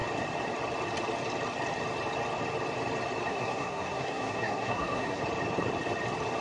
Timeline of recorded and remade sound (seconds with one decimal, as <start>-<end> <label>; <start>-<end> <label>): 0.0-3.3 recorded; 3.3-5.2 remade; 5.2-6.4 recorded